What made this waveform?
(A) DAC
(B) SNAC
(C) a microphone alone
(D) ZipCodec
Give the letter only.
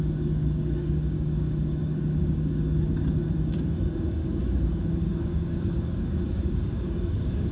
A